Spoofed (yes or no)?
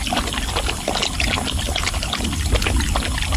no